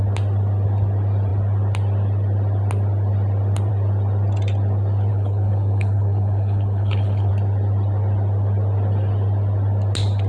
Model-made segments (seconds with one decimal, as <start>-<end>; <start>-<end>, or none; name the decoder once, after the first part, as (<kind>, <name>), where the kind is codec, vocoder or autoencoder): 5.1-7.3 (codec, HILCodec)